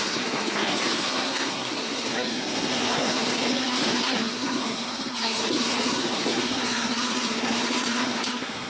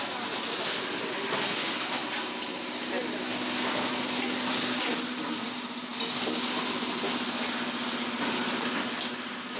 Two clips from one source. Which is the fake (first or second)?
first